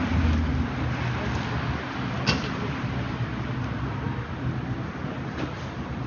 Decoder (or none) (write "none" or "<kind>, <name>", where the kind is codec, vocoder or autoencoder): none